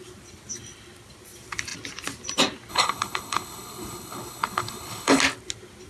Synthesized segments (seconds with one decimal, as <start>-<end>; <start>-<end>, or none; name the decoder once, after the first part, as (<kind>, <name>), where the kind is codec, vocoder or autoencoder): 2.7-5.2 (codec, HILCodec)